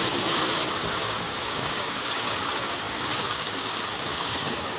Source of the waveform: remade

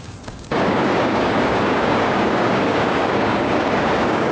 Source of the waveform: remade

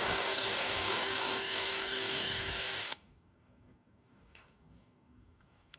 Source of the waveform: remade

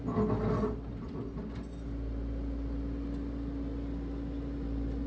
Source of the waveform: recorded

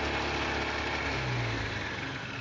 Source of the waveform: recorded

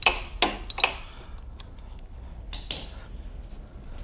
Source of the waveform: recorded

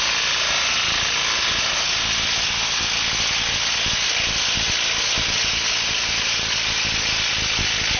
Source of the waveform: recorded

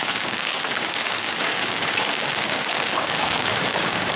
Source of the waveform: remade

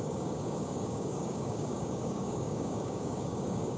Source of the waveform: remade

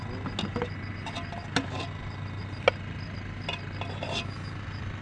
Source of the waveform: recorded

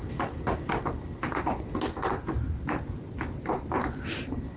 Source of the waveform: recorded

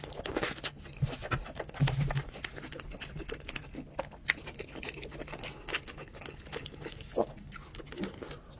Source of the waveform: recorded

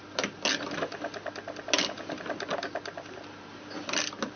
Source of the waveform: recorded